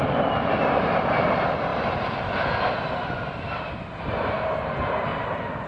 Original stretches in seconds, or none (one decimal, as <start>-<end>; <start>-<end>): 0.0-5.7